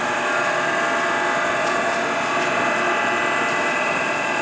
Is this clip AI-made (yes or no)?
no